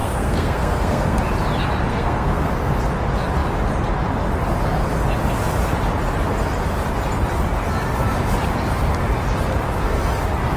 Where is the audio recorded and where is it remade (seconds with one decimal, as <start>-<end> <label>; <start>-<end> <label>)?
0.0-1.2 remade; 1.2-1.9 recorded; 1.9-2.5 remade; 2.5-10.6 recorded